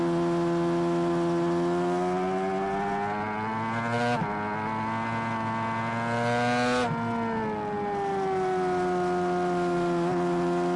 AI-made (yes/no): no